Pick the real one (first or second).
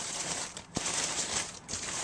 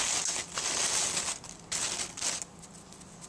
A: second